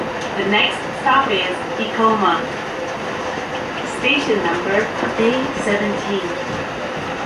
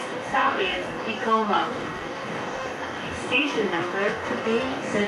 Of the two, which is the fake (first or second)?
second